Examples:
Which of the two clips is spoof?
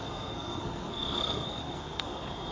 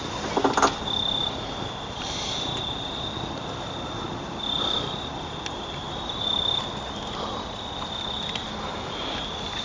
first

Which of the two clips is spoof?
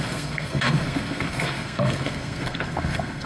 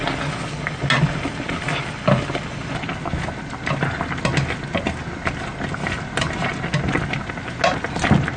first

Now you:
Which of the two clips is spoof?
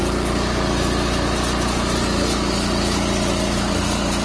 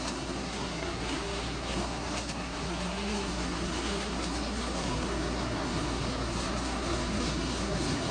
second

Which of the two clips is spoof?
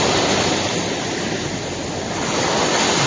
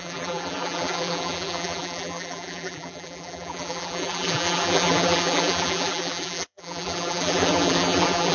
second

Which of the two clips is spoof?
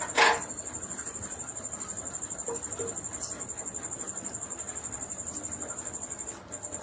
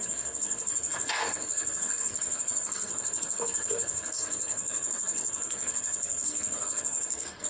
second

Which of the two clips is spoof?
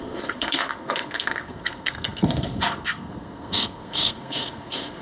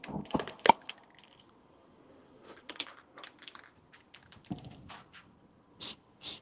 first